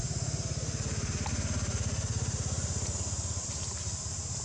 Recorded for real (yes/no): yes